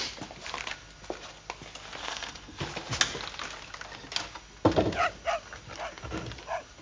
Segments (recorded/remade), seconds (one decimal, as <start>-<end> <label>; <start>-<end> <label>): 0.0-2.0 recorded; 2.0-2.6 remade; 2.6-6.8 recorded